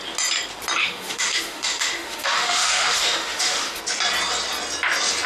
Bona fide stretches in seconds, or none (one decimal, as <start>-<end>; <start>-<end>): 0.0-0.8; 3.8-5.3